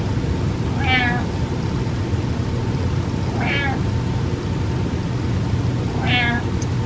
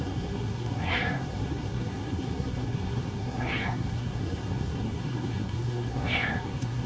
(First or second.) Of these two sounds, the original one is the first